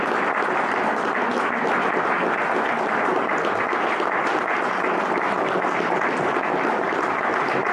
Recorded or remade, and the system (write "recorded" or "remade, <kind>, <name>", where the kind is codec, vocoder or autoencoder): recorded